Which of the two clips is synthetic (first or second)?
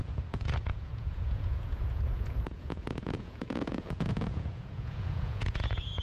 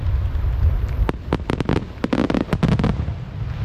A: first